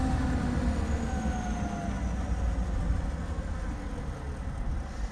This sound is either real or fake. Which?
real